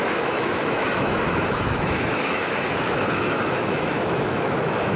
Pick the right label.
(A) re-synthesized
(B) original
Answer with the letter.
A